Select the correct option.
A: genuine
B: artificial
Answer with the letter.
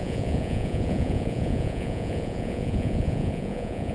B